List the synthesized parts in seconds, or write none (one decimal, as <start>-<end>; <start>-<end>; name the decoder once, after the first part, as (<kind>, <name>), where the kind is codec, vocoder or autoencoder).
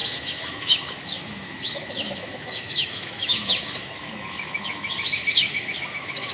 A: 0.0-6.3 (autoencoder, DAC-VAE)